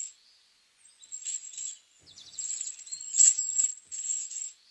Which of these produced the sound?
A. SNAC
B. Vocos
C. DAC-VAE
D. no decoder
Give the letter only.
B